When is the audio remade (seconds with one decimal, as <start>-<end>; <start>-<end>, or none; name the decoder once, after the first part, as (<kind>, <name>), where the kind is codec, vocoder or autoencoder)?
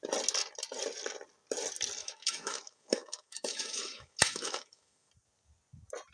2.0-5.1 (autoencoder, DAC-VAE)